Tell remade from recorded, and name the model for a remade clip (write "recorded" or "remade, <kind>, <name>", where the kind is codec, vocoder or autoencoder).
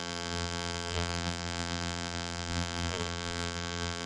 remade, vocoder, BigVGAN v2